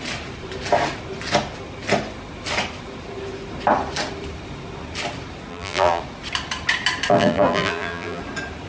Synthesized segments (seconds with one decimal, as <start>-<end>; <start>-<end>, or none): 5.5-6.0; 7.1-8.2